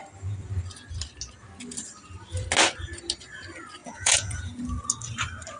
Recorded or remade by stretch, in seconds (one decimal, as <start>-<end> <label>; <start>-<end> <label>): 0.0-3.8 recorded; 3.8-4.5 remade; 4.5-5.6 recorded